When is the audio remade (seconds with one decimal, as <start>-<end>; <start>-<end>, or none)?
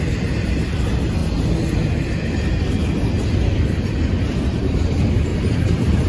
5.3-6.1